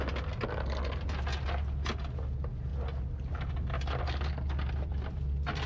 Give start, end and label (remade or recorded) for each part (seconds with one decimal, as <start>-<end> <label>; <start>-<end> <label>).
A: 0.0-5.7 recorded